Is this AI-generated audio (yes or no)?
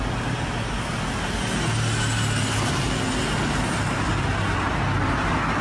no